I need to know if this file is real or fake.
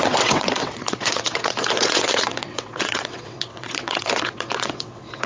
fake